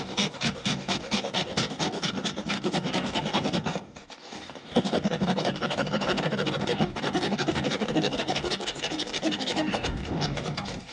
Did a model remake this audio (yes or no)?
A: yes